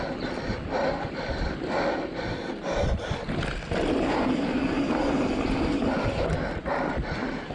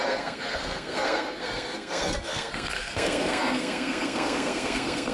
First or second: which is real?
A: first